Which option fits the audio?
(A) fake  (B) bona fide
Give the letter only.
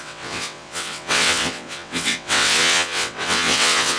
A